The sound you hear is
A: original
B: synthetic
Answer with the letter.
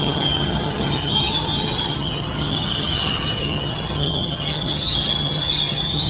B